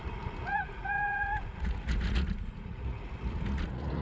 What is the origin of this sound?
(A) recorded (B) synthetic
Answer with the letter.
B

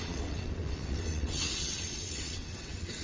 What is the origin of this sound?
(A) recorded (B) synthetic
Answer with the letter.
B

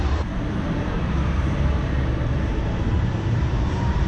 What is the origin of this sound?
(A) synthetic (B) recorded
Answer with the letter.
A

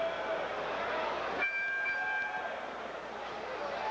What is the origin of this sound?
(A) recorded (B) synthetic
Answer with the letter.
A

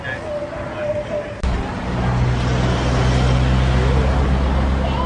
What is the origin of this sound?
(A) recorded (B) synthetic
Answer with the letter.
A